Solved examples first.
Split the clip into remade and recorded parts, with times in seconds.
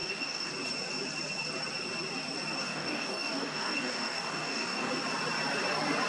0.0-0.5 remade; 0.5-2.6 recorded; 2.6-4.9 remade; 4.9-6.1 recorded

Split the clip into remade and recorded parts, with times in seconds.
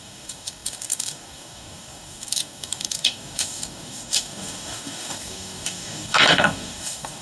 0.0-7.2 remade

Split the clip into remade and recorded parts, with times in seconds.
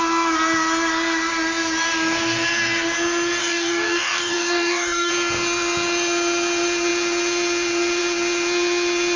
0.0-3.4 recorded; 3.4-5.1 remade; 5.1-9.2 recorded